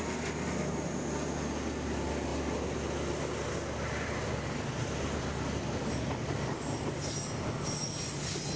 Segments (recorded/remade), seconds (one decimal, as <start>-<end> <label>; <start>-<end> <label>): 0.0-8.6 recorded